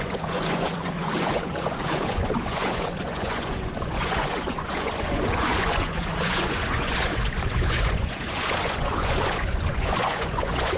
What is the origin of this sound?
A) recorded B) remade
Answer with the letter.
B